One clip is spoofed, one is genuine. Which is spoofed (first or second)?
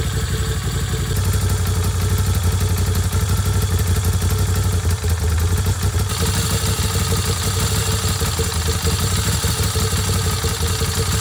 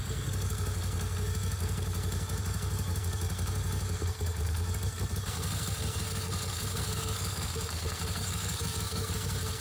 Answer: second